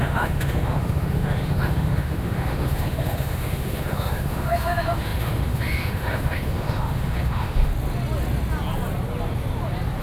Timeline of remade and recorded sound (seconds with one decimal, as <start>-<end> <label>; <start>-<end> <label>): 0.0-7.7 remade; 7.7-10.0 recorded